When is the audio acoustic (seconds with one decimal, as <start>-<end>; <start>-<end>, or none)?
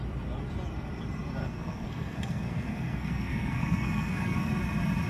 0.0-1.4; 4.5-5.1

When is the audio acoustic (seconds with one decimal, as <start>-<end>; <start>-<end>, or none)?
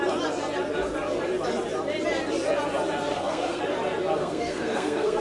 0.0-3.1; 3.6-4.2